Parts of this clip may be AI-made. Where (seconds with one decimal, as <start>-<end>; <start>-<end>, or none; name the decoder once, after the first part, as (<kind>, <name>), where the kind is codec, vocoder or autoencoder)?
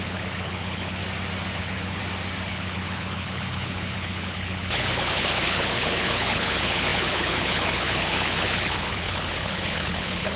0.0-1.0 (codec, HILCodec); 1.6-2.0; 2.5-10.4